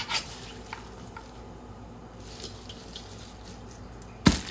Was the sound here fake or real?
real